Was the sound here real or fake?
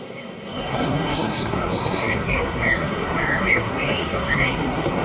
fake